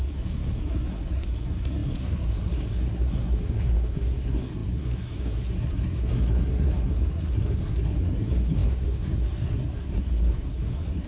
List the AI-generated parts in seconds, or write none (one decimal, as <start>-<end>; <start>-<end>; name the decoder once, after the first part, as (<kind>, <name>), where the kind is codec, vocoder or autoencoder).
0.0-11.1 (codec, SNAC)